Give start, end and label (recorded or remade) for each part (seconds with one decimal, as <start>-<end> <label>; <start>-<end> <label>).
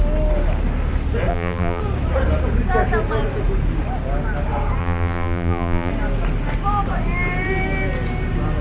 0.0-1.3 recorded; 1.3-1.8 remade; 1.8-4.8 recorded; 4.8-5.9 remade; 5.9-8.6 recorded